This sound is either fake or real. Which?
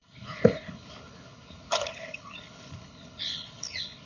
fake